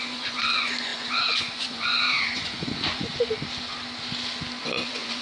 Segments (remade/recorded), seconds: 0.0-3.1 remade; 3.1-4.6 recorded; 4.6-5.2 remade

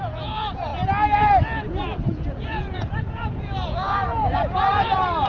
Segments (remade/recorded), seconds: 0.0-0.7 remade; 0.7-1.8 recorded; 1.8-5.3 remade